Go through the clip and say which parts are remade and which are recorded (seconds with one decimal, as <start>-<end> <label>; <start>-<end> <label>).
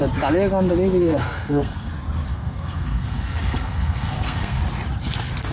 0.0-1.0 recorded; 1.0-1.9 remade; 1.9-2.3 recorded; 2.3-4.6 remade; 4.6-5.5 recorded